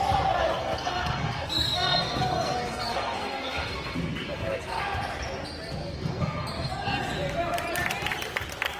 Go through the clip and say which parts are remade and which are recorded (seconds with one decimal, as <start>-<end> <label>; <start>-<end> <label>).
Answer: 0.0-0.6 recorded; 0.6-4.8 remade; 4.8-5.8 recorded; 5.8-6.7 remade; 6.7-8.8 recorded